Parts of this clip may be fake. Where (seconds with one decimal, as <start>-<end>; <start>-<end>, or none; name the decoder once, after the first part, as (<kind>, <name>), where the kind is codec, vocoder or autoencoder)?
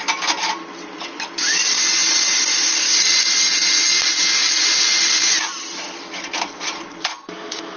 none